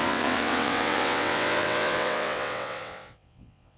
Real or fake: fake